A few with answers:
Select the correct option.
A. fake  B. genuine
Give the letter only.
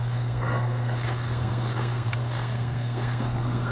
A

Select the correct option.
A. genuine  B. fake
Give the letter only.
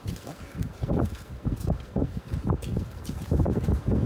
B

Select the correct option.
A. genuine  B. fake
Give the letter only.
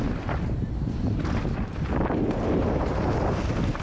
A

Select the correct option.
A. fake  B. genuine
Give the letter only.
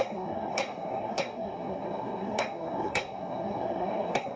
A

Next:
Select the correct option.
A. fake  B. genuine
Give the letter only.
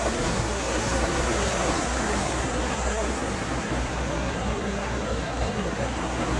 A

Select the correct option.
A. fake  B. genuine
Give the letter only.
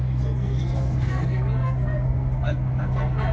A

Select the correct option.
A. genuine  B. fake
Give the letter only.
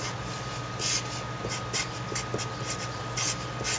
A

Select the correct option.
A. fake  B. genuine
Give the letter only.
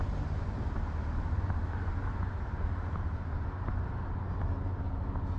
B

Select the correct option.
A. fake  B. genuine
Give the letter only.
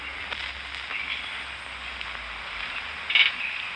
B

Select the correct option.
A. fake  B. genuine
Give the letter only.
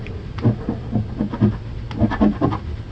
B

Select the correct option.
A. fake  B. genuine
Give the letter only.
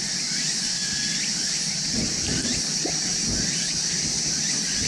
B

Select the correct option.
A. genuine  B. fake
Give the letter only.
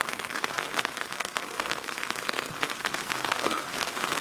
B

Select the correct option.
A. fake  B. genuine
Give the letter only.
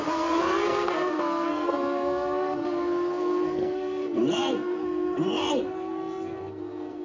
A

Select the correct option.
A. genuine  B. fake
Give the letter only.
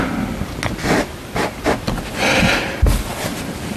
A